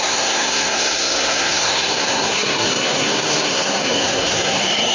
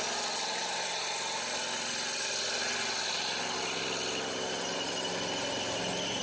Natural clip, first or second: second